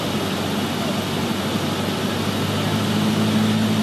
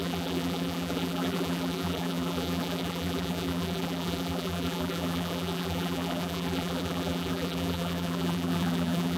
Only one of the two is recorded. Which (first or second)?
first